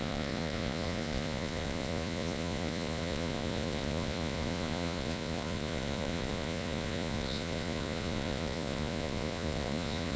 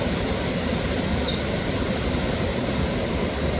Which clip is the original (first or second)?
second